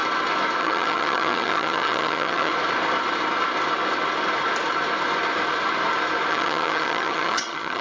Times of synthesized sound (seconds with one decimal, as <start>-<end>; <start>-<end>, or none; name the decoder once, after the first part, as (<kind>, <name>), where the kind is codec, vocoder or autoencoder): 0.6-2.5 (vocoder, HiFi-GAN); 6.3-7.8